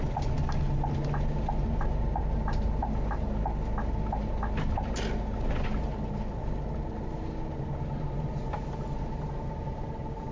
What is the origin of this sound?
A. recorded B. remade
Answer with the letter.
A